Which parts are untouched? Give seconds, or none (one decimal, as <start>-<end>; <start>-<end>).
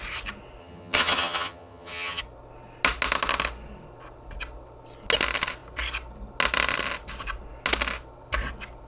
0.0-0.6; 2.2-8.9